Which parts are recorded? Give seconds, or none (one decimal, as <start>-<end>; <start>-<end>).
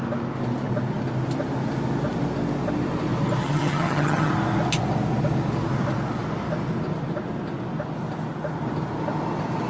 0.0-3.4; 4.3-9.7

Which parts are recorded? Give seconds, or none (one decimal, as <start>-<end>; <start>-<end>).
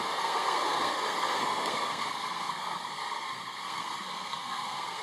none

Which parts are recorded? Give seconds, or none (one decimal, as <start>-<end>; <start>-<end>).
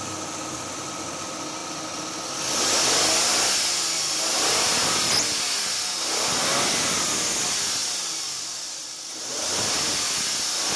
0.0-10.8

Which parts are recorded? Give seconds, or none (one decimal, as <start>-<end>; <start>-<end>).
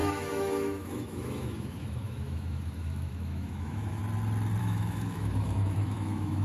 4.0-4.6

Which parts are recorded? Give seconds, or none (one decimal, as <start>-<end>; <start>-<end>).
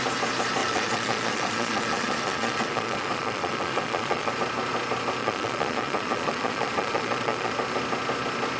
0.0-0.6; 4.3-5.2; 7.5-8.6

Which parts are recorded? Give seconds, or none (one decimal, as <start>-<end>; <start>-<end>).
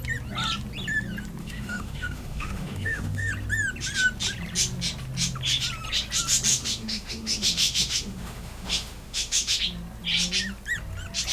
0.0-1.4; 3.3-6.5; 9.6-11.3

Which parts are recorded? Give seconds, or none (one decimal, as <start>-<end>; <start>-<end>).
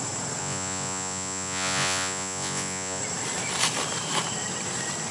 0.0-0.4; 3.0-5.1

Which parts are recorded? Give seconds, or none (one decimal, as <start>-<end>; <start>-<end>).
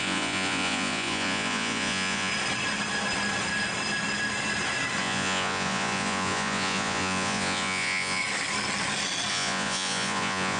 2.3-5.0; 8.2-9.3